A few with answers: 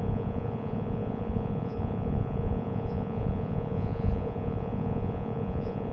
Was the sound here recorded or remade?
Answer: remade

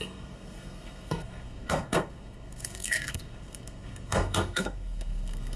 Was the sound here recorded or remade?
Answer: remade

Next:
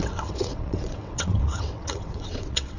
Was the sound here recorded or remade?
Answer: remade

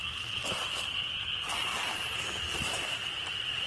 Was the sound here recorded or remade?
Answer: remade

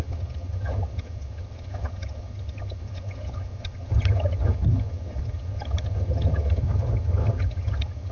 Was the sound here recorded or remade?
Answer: remade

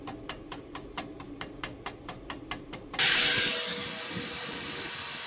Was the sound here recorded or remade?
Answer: recorded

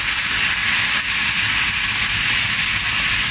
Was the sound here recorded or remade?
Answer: recorded